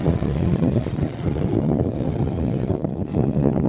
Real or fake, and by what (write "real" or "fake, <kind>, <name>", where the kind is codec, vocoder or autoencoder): fake, vocoder, Vocos